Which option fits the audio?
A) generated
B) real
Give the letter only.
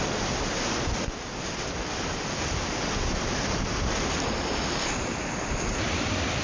B